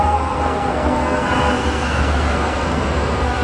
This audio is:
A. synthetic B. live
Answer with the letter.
A